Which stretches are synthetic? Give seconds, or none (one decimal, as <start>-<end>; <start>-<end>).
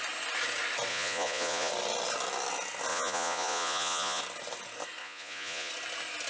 0.9-1.7; 2.9-4.2; 5.0-5.7